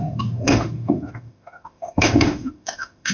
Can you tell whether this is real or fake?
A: fake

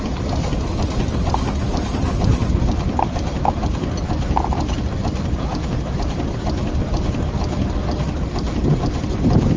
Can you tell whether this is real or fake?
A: real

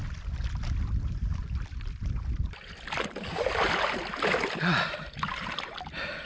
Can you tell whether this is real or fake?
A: real